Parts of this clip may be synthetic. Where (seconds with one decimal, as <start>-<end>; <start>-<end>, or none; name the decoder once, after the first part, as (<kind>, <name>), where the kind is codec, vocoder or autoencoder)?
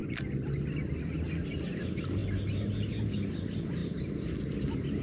none